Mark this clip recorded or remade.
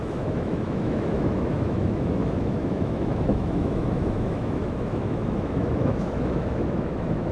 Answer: remade